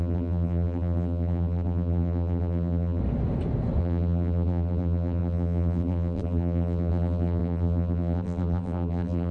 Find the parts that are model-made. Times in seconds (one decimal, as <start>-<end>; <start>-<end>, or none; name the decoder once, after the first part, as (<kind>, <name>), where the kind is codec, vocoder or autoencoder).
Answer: 0.0-3.0 (vocoder, BigVGAN v2); 3.8-9.3